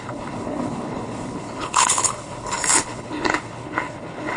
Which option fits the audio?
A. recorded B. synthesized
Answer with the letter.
B